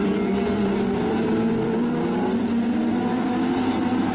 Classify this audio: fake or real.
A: real